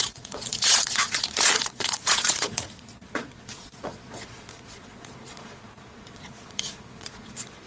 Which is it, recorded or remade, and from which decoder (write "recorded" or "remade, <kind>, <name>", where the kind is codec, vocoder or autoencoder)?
remade, vocoder, Vocos